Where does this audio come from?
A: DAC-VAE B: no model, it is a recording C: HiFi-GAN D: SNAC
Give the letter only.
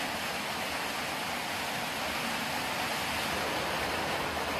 B